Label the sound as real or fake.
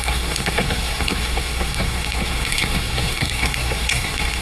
fake